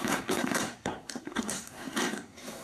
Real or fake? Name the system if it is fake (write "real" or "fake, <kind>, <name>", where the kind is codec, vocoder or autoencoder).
fake, codec, SNAC